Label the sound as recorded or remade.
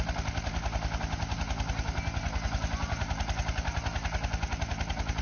recorded